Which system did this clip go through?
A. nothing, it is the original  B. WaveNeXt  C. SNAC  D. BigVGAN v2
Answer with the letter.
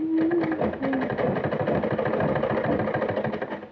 A